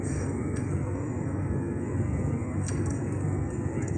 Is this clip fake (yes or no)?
yes